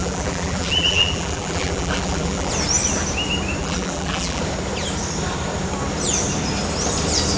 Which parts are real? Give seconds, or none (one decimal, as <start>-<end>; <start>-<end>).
2.5-3.6; 4.4-7.4